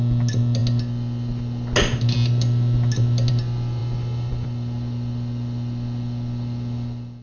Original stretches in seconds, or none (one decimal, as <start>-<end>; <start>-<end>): 0.0-7.2